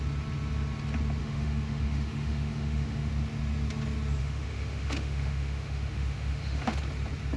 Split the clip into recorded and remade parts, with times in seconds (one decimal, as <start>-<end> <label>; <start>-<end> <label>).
0.0-1.2 recorded; 1.2-3.1 remade; 3.1-4.2 recorded; 4.2-6.8 remade; 6.8-7.4 recorded